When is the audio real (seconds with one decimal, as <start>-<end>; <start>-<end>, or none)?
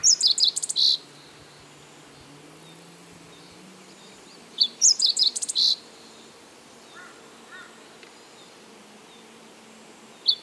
0.0-3.0; 7.2-10.4